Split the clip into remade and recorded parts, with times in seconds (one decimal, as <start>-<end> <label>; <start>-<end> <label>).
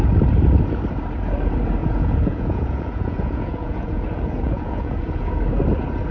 0.0-1.8 recorded; 1.8-5.3 remade; 5.3-6.1 recorded